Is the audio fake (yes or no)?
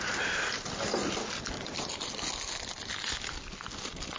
no